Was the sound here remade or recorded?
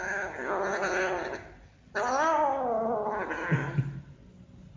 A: recorded